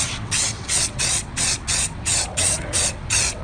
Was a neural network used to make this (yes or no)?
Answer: yes